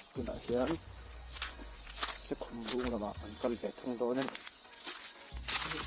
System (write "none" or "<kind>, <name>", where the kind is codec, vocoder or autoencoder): vocoder, Vocos